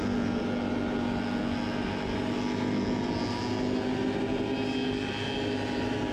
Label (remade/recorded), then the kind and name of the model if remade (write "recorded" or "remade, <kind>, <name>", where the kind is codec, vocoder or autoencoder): recorded